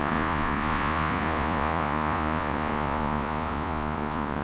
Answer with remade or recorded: remade